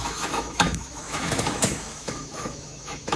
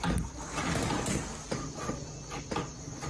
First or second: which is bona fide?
second